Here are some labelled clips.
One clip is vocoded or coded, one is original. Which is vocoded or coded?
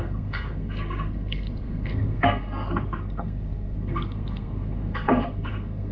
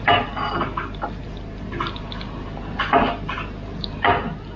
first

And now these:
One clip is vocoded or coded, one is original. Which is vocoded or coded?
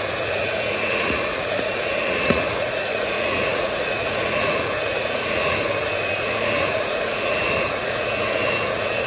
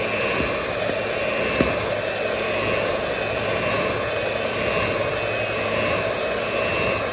first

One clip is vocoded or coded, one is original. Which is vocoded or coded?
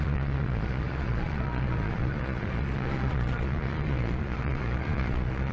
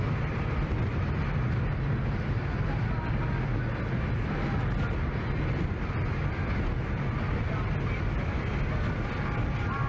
first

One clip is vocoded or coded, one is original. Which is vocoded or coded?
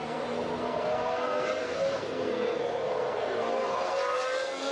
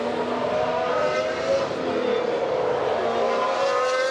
first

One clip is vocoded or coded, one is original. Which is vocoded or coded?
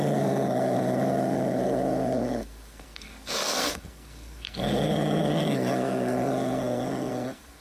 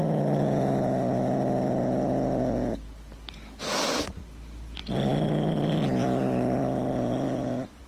first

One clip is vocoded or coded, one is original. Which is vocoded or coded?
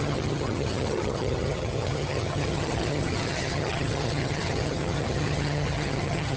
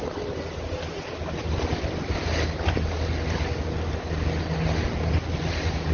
first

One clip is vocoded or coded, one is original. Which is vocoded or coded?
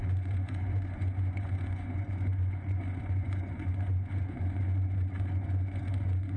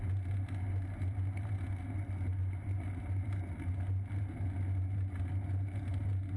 first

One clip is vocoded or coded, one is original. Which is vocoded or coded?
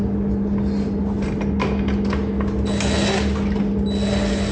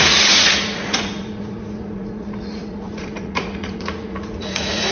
second